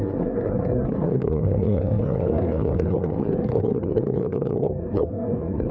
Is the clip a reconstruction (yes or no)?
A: yes